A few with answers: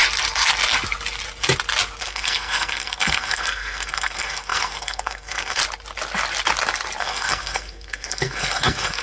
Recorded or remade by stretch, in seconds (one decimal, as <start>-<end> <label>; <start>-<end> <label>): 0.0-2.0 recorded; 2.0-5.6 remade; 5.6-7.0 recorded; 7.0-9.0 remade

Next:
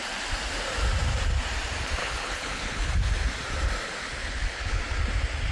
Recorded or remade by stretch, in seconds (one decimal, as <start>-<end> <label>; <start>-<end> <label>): 0.0-2.0 recorded; 2.0-3.1 remade; 3.1-4.2 recorded; 4.2-4.8 remade; 4.8-5.5 recorded

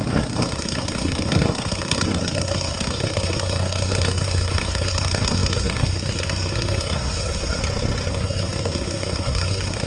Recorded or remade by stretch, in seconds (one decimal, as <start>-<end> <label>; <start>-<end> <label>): 0.0-7.6 remade; 7.6-8.1 recorded; 8.1-9.9 remade